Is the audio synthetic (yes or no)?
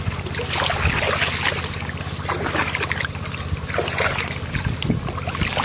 no